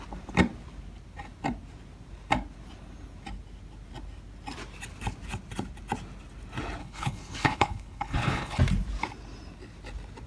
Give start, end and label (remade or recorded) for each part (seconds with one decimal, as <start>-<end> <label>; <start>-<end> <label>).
0.0-6.8 recorded; 6.8-8.6 remade; 8.6-10.3 recorded

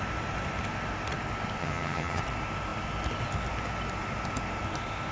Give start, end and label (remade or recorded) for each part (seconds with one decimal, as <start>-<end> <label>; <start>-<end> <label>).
0.0-1.6 recorded; 1.6-2.2 remade; 2.2-5.1 recorded

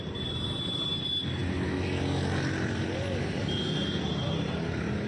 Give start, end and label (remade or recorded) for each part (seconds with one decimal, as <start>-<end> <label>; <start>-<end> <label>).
0.0-5.1 recorded

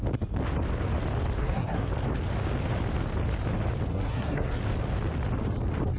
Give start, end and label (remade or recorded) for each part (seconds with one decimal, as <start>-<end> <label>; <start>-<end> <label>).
0.0-1.4 recorded; 1.4-1.9 remade; 1.9-3.9 recorded; 3.9-4.6 remade; 4.6-6.0 recorded

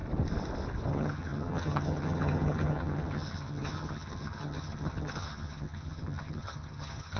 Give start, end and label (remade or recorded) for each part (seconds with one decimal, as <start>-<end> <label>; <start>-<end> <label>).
0.0-0.9 recorded; 0.9-7.2 remade

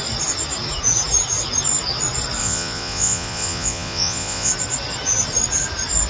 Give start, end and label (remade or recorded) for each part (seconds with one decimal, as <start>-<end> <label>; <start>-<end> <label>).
0.0-2.4 recorded; 2.4-4.5 remade; 4.5-6.1 recorded

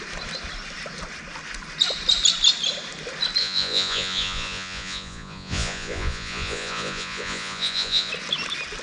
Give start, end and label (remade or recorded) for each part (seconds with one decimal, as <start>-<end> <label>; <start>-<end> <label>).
0.0-3.4 recorded; 3.4-8.1 remade; 8.1-8.8 recorded